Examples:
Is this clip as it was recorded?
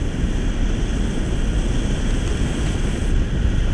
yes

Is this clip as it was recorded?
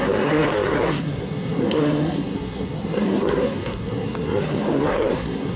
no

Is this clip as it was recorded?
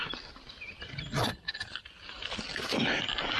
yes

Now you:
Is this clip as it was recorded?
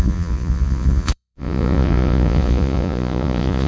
no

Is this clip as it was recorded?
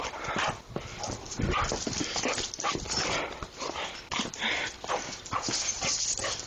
yes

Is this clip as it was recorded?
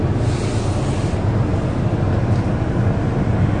yes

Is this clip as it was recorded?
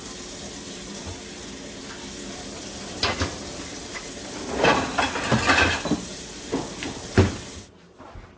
yes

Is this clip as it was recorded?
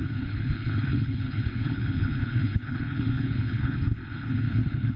no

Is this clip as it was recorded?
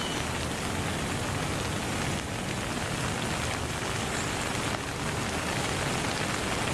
yes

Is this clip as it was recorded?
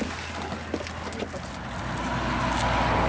yes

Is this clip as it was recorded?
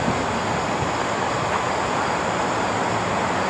yes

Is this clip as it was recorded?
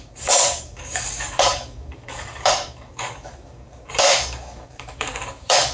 no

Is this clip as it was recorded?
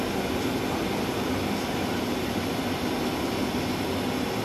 yes